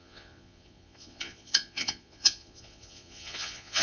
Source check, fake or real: fake